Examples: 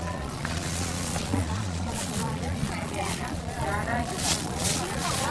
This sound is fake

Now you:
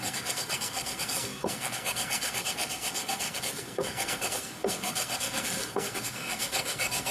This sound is fake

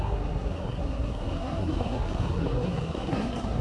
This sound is fake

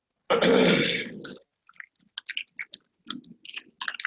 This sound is real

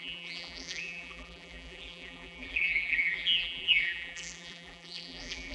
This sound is fake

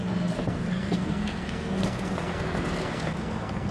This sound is fake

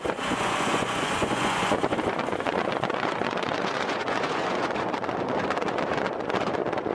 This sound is fake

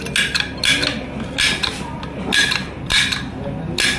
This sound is real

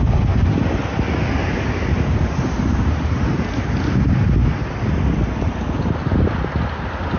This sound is real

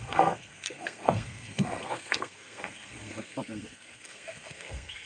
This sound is fake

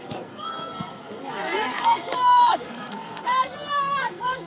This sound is fake